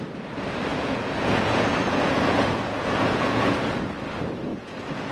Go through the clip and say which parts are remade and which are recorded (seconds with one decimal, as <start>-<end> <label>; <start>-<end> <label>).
0.0-0.7 recorded; 0.7-3.8 remade; 3.8-4.5 recorded; 4.5-5.1 remade